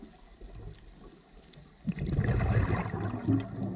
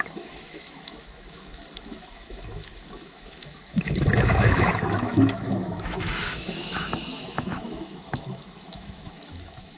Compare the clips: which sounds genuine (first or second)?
first